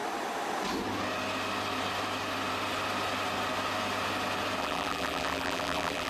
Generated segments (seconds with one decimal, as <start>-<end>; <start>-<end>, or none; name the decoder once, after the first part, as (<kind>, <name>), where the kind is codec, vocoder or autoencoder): 4.6-6.1 (vocoder, BigVGAN v2)